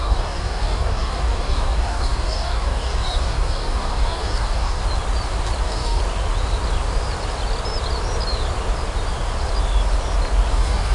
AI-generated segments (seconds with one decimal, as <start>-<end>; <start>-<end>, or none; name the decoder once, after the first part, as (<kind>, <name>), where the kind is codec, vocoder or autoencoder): 0.0-4.8 (codec, DAC); 5.6-6.0; 10.5-10.9